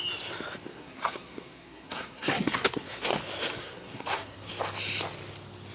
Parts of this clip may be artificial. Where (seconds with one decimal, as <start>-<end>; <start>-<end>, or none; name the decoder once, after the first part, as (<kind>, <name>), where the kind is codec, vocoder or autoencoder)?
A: 0.7-3.2 (codec, SNAC); 3.6-4.5